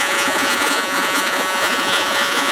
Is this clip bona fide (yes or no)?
no